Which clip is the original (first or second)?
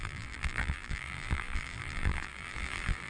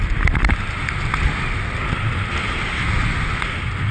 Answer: second